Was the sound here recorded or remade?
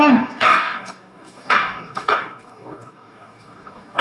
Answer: remade